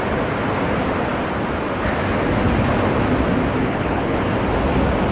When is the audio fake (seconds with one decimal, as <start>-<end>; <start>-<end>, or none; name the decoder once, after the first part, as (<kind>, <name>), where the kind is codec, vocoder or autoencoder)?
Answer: 3.6-4.3 (codec, HILCodec)